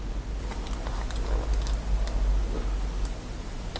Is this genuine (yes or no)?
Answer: yes